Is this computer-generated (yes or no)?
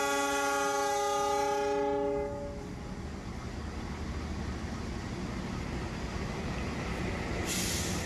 no